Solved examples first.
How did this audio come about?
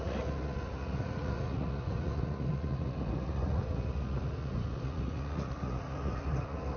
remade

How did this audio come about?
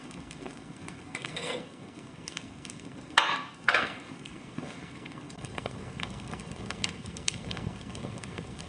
remade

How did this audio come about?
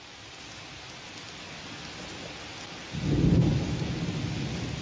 recorded